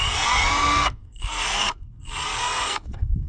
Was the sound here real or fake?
fake